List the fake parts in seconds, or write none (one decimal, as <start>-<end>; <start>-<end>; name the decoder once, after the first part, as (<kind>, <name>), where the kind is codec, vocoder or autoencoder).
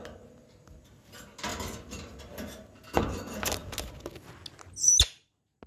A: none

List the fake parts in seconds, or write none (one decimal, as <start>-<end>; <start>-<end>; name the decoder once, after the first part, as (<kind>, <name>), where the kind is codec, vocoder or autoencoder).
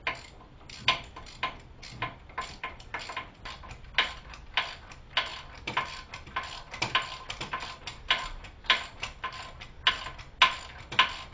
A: none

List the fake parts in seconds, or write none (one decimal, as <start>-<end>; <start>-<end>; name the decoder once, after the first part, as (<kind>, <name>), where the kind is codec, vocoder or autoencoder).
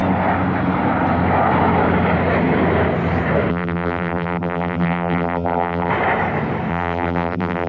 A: 3.5-5.9 (vocoder, BigVGAN v2); 6.7-7.7